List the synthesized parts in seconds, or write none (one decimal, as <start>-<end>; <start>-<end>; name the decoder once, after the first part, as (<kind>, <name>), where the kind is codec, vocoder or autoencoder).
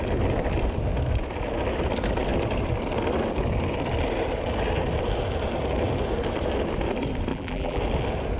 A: 7.3-7.8 (vocoder, BigVGAN v2)